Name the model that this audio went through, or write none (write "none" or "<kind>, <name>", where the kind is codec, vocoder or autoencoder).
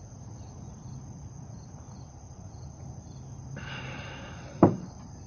vocoder, BigVGAN v2